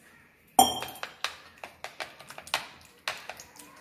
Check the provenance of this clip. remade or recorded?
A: recorded